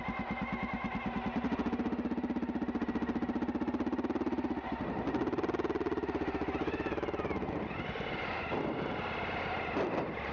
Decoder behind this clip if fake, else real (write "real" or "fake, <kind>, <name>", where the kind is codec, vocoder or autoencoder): real